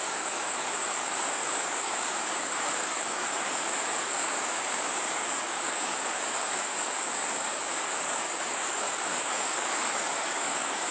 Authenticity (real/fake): fake